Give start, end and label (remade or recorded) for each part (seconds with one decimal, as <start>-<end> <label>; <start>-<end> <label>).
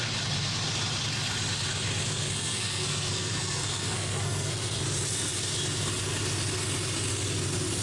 0.0-2.1 recorded; 2.1-4.8 remade; 4.8-7.8 recorded